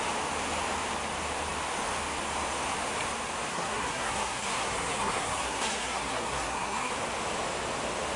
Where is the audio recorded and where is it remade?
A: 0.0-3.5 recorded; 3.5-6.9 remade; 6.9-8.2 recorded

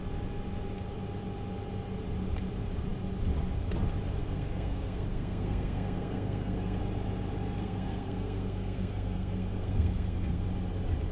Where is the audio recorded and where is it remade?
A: 0.0-4.2 recorded; 4.2-6.8 remade; 6.8-7.6 recorded; 7.6-10.4 remade; 10.4-11.1 recorded

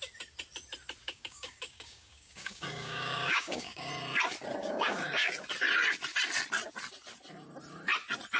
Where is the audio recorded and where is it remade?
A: 0.0-1.0 recorded; 1.0-3.9 remade; 3.9-4.6 recorded; 4.6-5.3 remade; 5.3-8.4 recorded

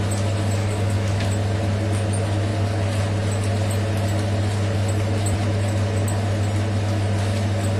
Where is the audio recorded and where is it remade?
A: 0.0-0.6 recorded; 0.6-1.3 remade; 1.3-7.8 recorded

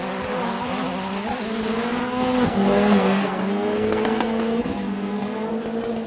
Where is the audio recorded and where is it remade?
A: 0.0-2.0 recorded; 2.0-5.5 remade; 5.5-6.1 recorded

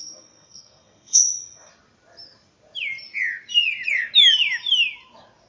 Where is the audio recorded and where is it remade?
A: 0.0-1.7 remade; 1.7-5.5 recorded